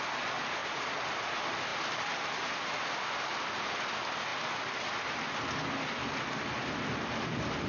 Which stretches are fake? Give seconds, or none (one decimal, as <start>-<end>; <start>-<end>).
0.6-1.2; 1.7-2.5